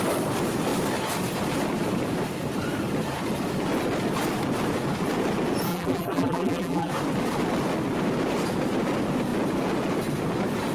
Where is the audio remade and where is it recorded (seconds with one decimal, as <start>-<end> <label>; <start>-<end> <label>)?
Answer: 0.0-5.7 recorded; 5.7-6.9 remade; 6.9-10.7 recorded